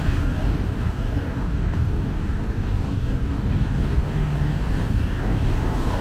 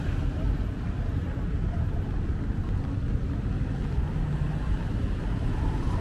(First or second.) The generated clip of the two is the first